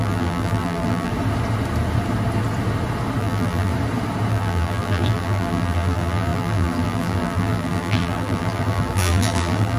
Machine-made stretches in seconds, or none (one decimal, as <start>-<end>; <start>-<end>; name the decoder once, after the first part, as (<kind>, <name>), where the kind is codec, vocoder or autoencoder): 0.0-1.1 (vocoder, BigVGAN v2); 3.2-3.7; 4.3-9.8